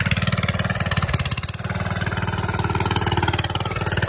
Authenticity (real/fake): real